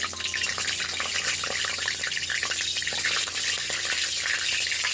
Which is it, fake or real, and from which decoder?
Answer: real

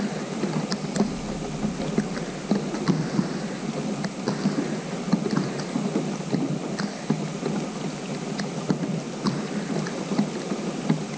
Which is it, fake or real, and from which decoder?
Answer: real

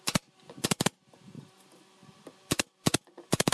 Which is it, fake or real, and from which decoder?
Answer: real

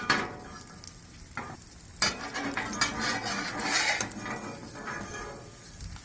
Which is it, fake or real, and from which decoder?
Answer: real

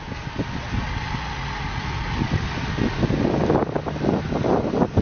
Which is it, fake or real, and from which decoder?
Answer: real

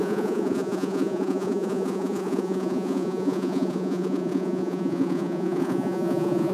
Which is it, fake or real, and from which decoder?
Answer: fake, vocoder, Vocos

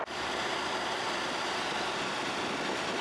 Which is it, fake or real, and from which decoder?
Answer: real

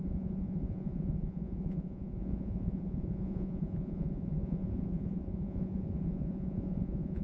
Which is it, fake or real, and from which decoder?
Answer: fake, vocoder, Vocos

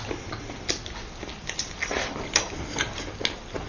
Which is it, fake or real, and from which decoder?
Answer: real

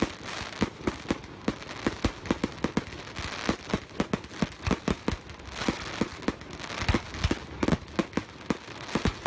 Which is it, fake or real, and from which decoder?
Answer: real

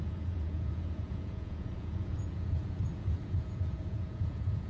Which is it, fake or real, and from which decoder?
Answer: fake, vocoder, Vocos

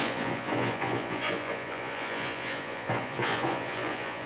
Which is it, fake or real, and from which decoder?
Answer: fake, vocoder, Vocos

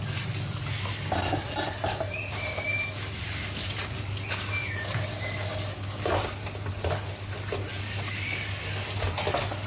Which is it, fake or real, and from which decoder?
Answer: real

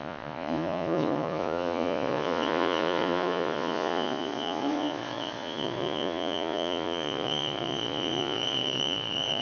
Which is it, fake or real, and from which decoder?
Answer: fake, vocoder, Vocos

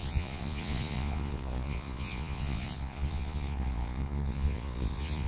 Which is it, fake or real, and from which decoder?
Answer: fake, vocoder, Vocos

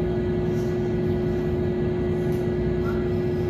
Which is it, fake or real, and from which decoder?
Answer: real